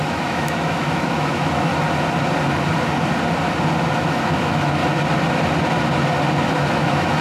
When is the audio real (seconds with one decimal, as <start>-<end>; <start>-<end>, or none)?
1.7-3.9; 4.8-6.7